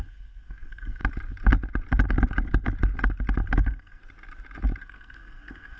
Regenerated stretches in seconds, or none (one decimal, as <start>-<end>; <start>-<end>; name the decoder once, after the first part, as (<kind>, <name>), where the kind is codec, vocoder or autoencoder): 0.0-1.0 (codec, SNAC); 3.6-4.0; 4.8-5.8